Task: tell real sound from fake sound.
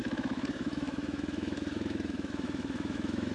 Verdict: fake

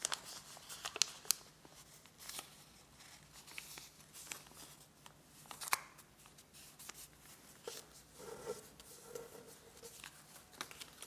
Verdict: real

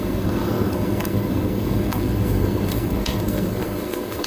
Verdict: fake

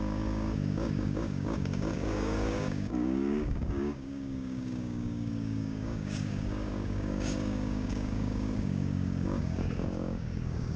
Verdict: fake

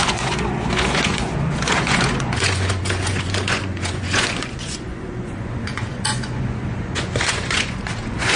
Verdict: fake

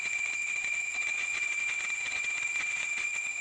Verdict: fake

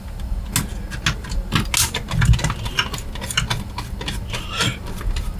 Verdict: real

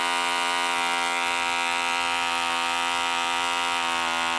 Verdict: real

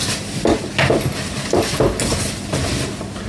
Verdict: real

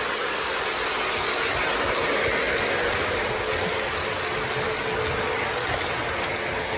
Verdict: real